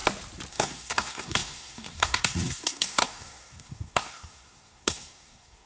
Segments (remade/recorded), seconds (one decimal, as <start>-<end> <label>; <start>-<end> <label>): 0.0-0.5 recorded; 0.5-5.7 remade